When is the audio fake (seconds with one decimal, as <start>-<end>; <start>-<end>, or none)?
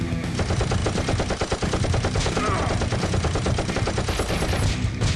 none